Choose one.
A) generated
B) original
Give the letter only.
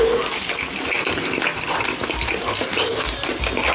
B